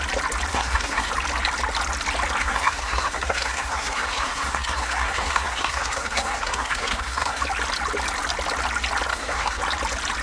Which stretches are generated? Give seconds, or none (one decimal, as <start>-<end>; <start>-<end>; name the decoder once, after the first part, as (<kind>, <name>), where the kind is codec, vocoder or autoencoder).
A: 0.5-1.1 (codec, SNAC); 2.4-7.4; 9.1-9.6